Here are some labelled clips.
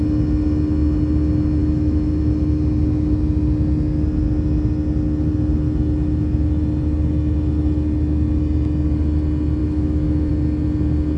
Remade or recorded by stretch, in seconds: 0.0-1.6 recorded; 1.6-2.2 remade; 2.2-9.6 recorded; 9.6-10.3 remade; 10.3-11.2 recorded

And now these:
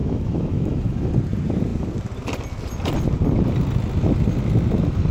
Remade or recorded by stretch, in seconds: 0.0-1.1 remade; 1.1-5.1 recorded

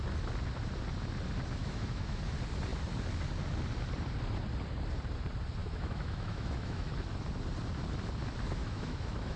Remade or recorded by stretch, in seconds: 0.0-1.6 recorded; 1.6-2.2 remade; 2.2-5.6 recorded; 5.6-6.9 remade; 6.9-8.6 recorded; 8.6-9.4 remade

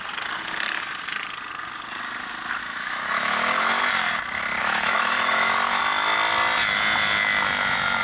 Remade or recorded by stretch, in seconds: 0.0-2.6 recorded; 2.6-3.8 remade; 3.8-4.6 recorded; 4.6-5.8 remade; 5.8-8.0 recorded